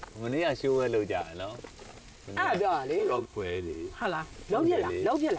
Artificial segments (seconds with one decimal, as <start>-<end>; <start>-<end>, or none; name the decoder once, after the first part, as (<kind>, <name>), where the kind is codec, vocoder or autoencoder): 3.0-4.3 (codec, ZipCodec)